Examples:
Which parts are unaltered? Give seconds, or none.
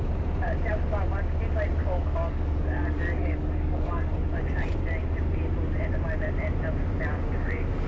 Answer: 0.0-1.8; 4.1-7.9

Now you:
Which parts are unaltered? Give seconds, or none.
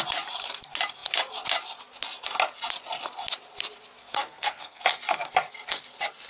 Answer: 0.0-4.1; 4.8-6.3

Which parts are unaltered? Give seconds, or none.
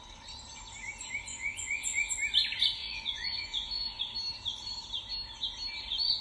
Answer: 0.0-1.3; 2.1-2.8; 4.0-6.2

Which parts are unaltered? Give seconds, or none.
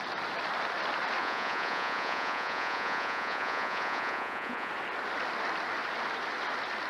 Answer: 0.0-1.2; 4.7-6.9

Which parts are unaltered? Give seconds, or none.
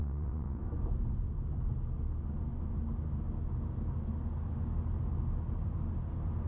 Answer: 0.6-6.5